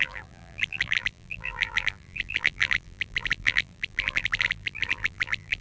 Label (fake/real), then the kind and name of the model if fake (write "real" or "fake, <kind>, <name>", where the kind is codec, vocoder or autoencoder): fake, vocoder, BigVGAN v2